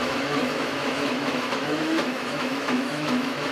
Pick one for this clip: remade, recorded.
remade